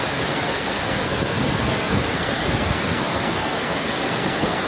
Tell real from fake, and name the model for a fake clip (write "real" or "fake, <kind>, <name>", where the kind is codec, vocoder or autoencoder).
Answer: fake, codec, SNAC